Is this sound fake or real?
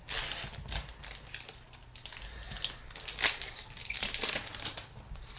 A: real